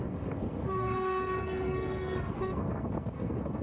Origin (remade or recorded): remade